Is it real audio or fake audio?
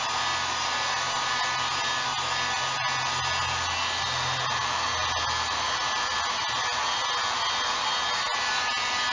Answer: real